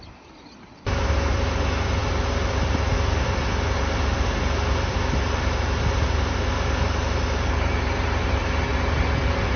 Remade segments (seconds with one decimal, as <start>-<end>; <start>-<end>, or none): none